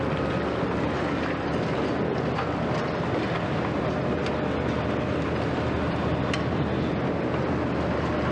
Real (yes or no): yes